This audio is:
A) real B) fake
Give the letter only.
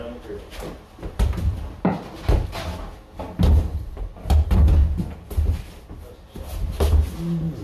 A